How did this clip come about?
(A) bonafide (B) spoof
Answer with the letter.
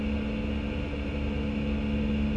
A